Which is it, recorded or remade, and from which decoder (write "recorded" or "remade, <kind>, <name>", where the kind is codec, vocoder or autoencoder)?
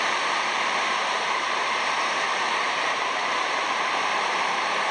remade, vocoder, BigVGAN v2